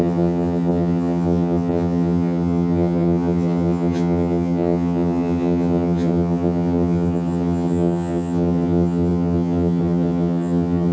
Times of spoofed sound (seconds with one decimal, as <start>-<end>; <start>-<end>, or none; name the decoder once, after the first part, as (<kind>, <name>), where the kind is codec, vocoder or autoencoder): 0.0-10.9 (vocoder, HiFi-GAN)

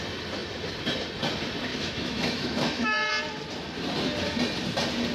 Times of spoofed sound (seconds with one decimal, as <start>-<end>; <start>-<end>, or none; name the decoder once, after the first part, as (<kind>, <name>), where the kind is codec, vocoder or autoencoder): 1.7-3.1 (autoencoder, DAC-VAE)

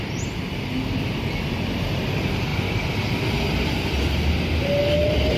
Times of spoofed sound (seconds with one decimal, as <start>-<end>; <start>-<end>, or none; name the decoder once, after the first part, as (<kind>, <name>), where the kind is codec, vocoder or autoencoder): none

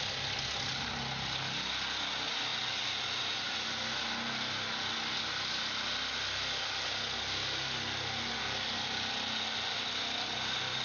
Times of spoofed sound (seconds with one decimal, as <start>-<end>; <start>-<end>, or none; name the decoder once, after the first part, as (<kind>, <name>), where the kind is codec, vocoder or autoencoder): none

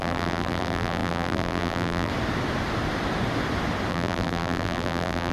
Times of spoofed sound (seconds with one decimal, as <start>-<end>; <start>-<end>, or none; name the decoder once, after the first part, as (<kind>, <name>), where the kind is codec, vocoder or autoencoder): 0.0-2.1 (vocoder, BigVGAN v2); 3.9-5.3